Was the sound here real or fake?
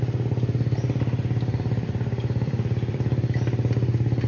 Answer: fake